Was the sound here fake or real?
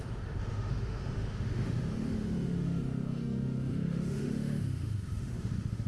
fake